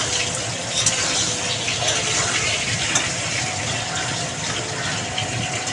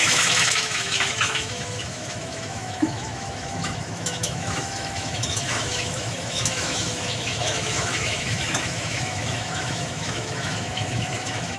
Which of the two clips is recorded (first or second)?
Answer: first